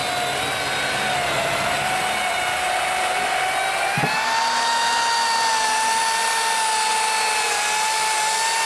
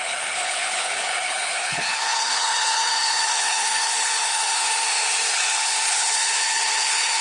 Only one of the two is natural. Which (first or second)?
first